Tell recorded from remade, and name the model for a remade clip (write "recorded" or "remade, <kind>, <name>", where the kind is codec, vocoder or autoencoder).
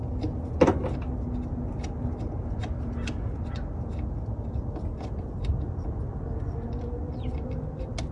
recorded